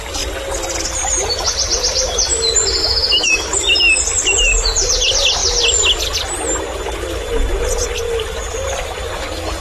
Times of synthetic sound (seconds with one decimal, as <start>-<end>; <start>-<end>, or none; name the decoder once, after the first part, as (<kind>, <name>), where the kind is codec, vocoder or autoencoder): 2.8-3.3 (autoencoder, DAC-VAE)